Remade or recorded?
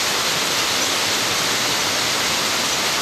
recorded